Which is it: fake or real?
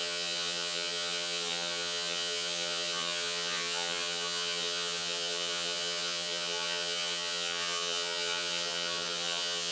fake